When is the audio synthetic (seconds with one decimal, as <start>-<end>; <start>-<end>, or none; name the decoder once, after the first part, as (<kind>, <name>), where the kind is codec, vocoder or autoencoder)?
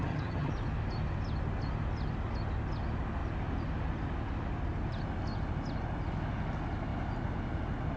0.0-0.5 (vocoder, HiFi-GAN)